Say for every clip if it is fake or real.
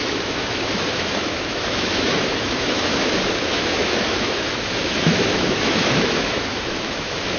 fake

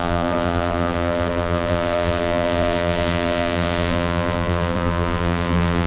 fake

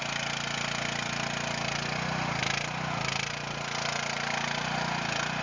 real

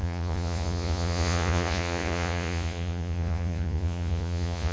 fake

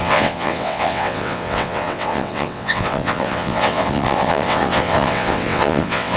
fake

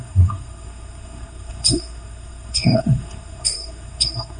fake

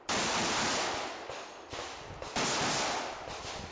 real